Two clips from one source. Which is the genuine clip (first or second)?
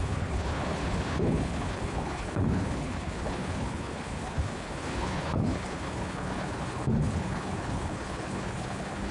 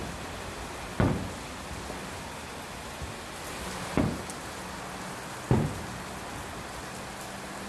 second